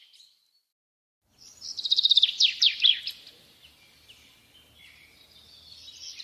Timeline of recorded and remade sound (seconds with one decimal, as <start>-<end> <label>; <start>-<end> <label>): 0.0-3.0 remade; 3.0-6.2 recorded